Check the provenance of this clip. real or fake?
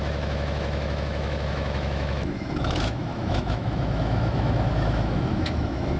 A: fake